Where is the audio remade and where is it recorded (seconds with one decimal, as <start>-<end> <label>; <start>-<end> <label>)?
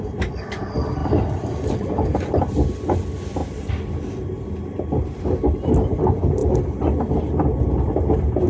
0.0-8.5 recorded